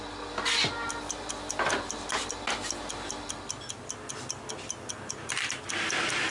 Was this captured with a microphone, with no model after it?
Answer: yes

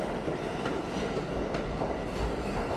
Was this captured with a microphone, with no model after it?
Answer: yes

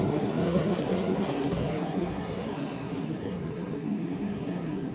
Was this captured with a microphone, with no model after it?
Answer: no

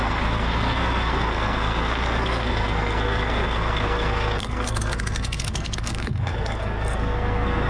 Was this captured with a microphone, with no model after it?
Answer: no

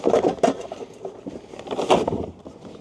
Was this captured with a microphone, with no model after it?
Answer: yes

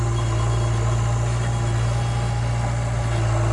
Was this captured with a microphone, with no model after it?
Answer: yes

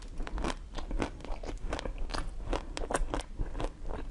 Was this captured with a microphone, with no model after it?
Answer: yes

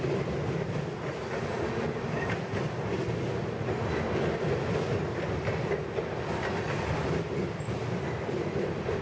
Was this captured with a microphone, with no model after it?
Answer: yes